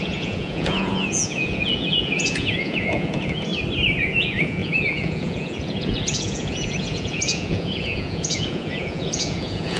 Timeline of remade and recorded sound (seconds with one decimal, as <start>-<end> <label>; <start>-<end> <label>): 0.0-3.5 remade; 3.5-4.0 recorded; 4.0-9.8 remade